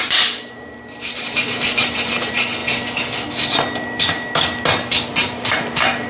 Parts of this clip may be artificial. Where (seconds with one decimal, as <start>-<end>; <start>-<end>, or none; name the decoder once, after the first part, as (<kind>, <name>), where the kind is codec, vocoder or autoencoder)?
0.0-2.6 (vocoder, BigVGAN v2); 5.1-6.1